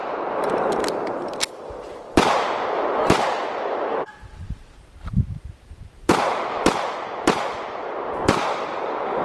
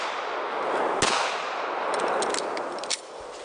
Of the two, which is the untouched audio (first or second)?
second